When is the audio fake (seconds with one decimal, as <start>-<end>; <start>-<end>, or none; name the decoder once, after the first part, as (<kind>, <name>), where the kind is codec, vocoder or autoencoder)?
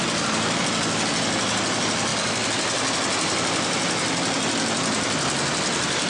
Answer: 0.0-0.6 (vocoder, BigVGAN v2)